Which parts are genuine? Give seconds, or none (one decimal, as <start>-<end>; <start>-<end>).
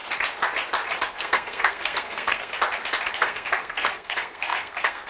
0.0-1.0; 2.5-3.1